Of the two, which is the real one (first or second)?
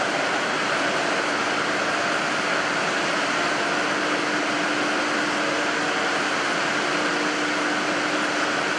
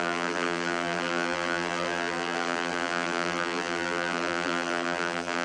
first